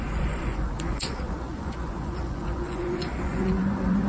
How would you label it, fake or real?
fake